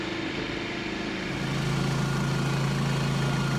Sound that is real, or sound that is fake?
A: real